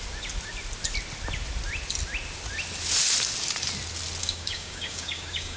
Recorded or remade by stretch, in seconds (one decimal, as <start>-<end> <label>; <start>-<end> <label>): 0.0-4.2 recorded; 4.2-5.6 remade